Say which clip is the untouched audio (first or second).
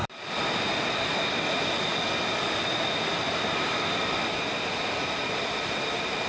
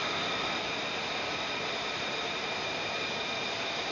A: first